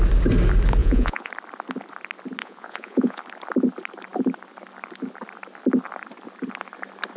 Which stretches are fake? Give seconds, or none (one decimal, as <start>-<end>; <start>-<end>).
0.8-1.3; 2.4-3.2